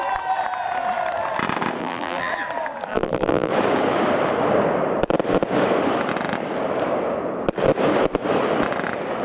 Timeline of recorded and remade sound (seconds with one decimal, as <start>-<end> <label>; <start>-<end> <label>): 0.0-1.8 recorded; 1.8-2.3 remade; 2.3-2.9 recorded; 2.9-3.5 remade; 3.5-9.2 recorded

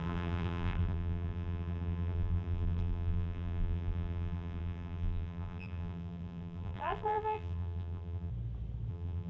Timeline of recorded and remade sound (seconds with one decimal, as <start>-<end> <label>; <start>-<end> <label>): 0.0-8.3 remade; 8.3-8.9 recorded; 8.9-9.3 remade

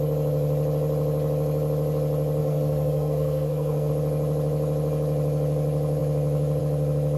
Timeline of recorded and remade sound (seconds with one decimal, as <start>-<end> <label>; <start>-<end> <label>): 0.0-2.4 recorded; 2.4-3.9 remade; 3.9-7.2 recorded

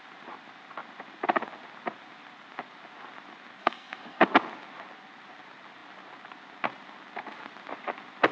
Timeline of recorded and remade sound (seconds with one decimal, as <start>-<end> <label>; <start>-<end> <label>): 0.0-3.6 recorded; 3.6-4.2 remade; 4.2-8.3 recorded

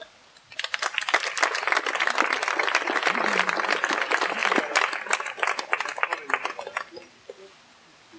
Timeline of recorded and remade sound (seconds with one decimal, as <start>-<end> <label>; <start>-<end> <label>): 0.0-8.2 recorded

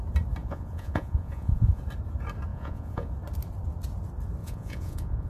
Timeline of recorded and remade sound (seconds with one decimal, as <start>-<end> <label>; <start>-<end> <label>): 0.0-0.4 recorded; 0.4-1.8 remade; 1.8-2.5 recorded; 2.5-3.1 remade; 3.1-4.4 recorded; 4.4-5.3 remade

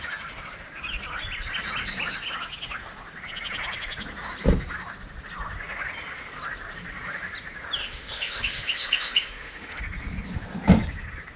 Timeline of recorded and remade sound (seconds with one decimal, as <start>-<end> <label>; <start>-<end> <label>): 0.0-7.8 recorded; 7.8-9.8 remade; 9.8-11.4 recorded